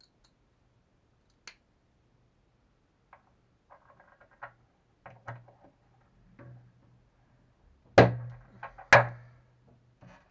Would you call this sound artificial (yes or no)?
no